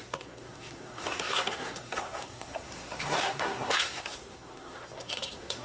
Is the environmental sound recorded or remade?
remade